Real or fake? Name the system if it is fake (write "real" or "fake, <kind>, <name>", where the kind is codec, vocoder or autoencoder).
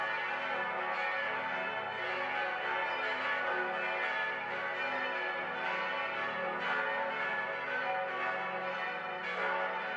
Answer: real